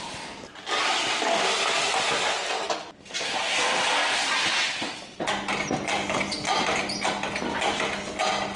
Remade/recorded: recorded